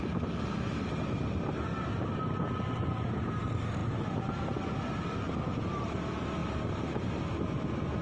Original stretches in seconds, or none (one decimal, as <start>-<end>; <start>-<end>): 0.0-8.0